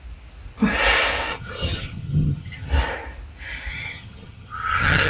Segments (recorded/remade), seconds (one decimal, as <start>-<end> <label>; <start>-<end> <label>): 0.0-1.3 recorded; 1.3-2.7 remade; 2.7-3.7 recorded; 3.7-5.1 remade